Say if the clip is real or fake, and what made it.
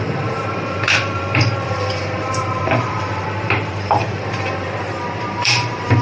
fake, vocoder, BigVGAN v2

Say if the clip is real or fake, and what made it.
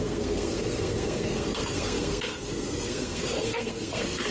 fake, codec, SNAC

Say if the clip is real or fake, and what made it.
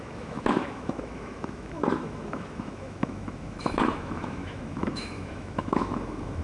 fake, autoencoder, DAC-VAE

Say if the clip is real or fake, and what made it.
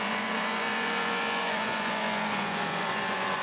fake, vocoder, Vocos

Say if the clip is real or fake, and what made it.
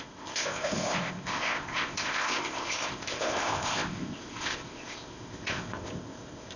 fake, codec, ZipCodec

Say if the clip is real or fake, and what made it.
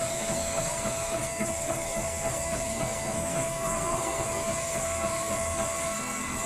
fake, codec, SNAC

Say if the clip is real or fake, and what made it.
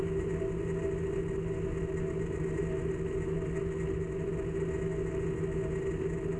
real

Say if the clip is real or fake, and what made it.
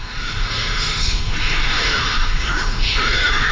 fake, autoencoder, DAC-VAE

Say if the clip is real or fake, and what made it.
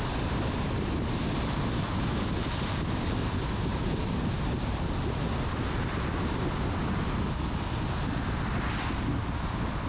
real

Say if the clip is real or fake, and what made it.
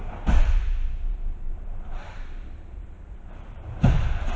fake, vocoder, BigVGAN v2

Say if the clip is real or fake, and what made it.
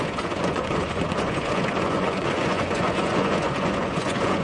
fake, vocoder, Vocos